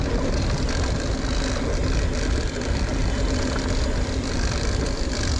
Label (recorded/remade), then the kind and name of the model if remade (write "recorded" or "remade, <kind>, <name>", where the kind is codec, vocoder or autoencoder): recorded